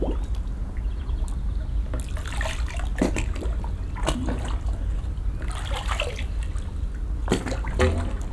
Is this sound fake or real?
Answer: real